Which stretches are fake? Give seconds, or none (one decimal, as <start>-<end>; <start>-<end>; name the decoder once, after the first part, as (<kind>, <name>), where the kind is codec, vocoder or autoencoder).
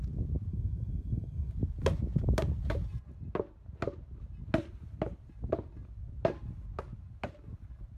0.5-1.5 (codec, SNAC)